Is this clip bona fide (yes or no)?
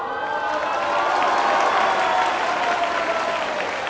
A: yes